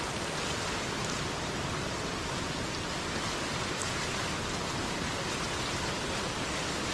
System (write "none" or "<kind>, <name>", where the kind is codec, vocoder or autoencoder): none